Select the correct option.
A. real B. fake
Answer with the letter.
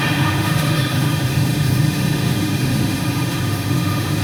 B